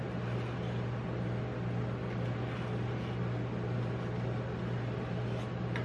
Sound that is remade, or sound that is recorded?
recorded